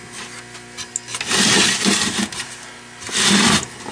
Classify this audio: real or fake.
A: real